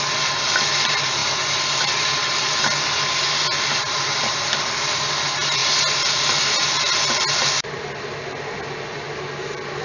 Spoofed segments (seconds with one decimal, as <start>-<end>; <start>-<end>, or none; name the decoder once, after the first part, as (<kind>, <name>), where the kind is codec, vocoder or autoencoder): 0.0-5.6 (vocoder, BigVGAN v2); 6.6-9.8